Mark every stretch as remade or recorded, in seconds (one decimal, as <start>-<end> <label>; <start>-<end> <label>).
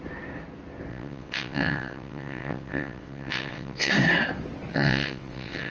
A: 0.0-0.9 recorded; 0.9-3.9 remade; 3.9-4.7 recorded; 4.7-5.7 remade